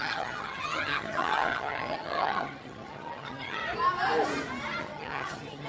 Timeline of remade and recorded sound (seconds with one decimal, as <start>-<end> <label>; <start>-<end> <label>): 0.0-3.6 remade; 3.6-4.8 recorded; 4.8-5.7 remade